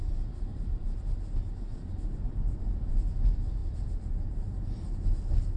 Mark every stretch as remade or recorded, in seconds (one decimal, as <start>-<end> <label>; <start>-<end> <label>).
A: 0.0-0.5 recorded; 0.5-1.0 remade; 1.0-1.7 recorded; 1.7-2.9 remade; 2.9-3.6 recorded; 3.6-4.6 remade; 4.6-5.6 recorded